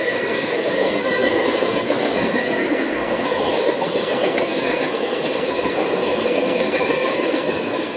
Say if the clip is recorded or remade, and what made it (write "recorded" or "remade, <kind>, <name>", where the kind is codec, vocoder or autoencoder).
remade, codec, SNAC